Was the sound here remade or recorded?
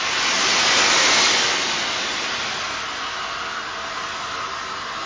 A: recorded